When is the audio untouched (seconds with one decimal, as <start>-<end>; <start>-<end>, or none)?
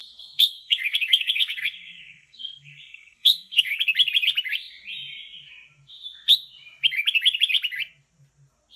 3.8-8.8